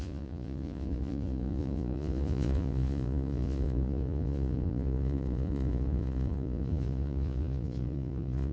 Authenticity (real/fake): fake